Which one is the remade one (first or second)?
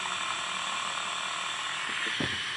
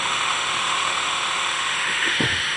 second